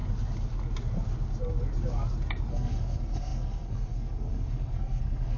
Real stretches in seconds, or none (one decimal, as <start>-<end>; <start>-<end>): 0.0-2.5